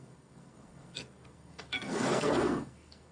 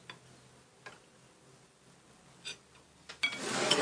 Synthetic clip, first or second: first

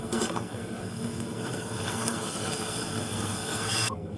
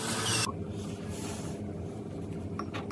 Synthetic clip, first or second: first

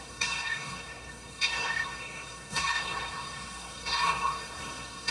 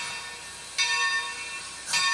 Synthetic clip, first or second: first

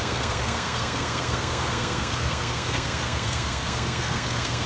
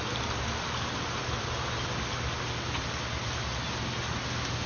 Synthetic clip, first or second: first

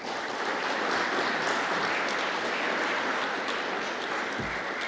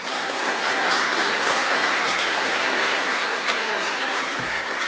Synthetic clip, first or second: second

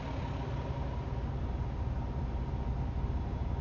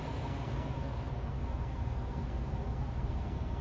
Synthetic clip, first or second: second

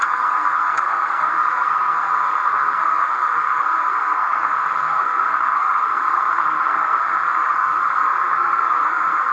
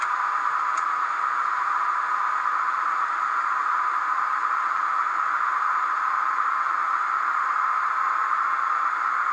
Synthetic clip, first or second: first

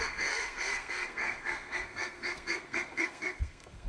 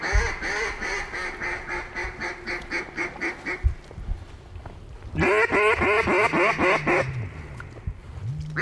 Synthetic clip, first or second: first